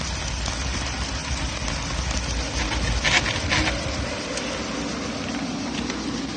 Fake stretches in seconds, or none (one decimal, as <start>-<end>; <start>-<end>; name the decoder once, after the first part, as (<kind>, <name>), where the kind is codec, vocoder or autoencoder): none